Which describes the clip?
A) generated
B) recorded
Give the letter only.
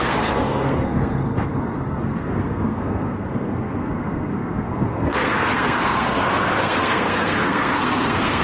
A